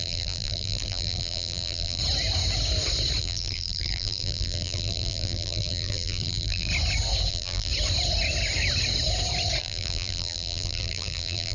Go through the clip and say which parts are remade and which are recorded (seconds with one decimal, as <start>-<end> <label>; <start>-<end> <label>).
0.0-2.0 remade; 2.0-3.2 recorded; 3.2-6.7 remade; 6.7-7.3 recorded; 7.3-7.7 remade; 7.7-9.6 recorded; 9.6-11.5 remade